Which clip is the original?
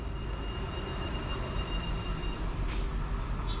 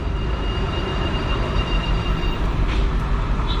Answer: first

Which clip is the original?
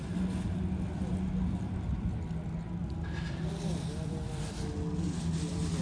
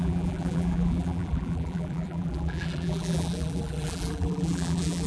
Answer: first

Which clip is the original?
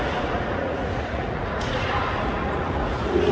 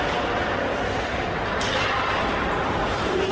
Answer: second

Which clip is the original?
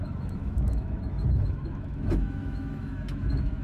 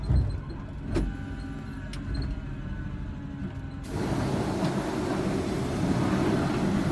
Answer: second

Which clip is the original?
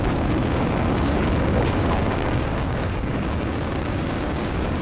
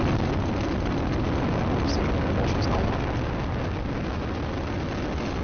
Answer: second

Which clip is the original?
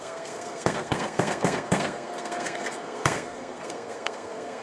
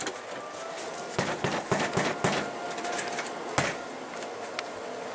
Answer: second